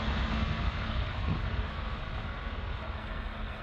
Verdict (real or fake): fake